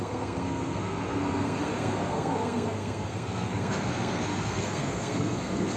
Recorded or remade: remade